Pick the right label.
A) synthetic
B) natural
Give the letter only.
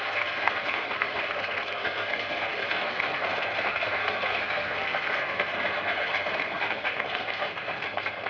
A